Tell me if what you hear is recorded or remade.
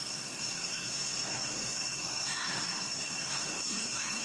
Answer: remade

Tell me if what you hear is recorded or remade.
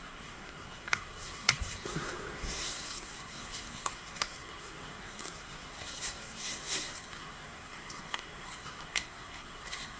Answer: remade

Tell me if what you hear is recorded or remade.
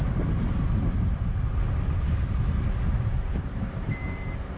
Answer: recorded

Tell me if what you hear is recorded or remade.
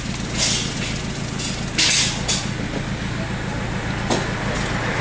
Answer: recorded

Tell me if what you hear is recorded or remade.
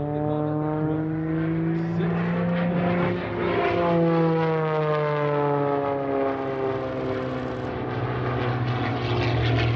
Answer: recorded